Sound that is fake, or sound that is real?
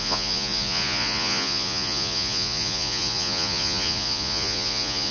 fake